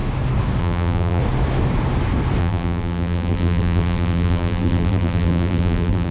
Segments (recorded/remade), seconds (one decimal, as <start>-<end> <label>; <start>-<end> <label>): 0.0-0.6 recorded; 0.6-1.2 remade; 1.2-2.4 recorded; 2.4-6.1 remade

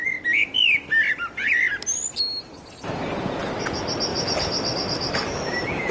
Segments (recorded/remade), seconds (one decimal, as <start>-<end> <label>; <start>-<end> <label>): 0.0-2.1 recorded; 2.1-3.0 remade; 3.0-4.1 recorded; 4.1-5.9 remade

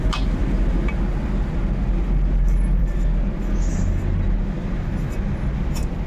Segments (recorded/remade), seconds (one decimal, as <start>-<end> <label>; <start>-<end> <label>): 0.0-6.1 recorded

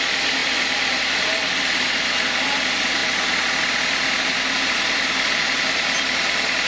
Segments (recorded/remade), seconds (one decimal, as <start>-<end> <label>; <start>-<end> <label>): 0.0-6.7 recorded

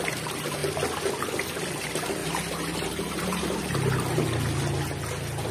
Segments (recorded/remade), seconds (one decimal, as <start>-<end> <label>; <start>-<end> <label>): 0.0-2.2 recorded; 2.2-3.6 remade; 3.6-5.5 recorded